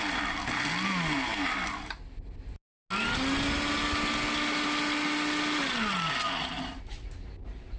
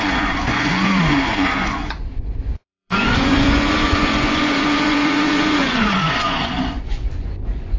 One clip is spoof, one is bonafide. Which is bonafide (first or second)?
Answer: first